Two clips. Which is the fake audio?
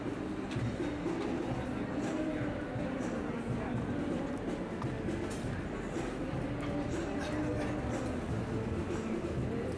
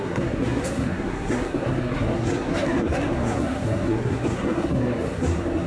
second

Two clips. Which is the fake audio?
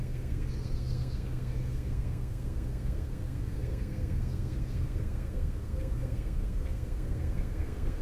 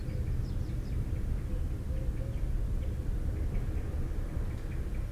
first